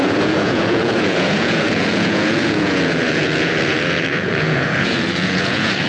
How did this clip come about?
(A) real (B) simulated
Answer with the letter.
B